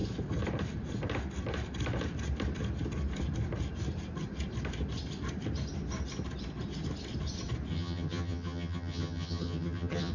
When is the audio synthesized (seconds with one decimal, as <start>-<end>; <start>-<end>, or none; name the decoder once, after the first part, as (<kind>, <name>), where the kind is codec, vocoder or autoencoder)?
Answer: 7.7-10.1 (vocoder, HiFi-GAN)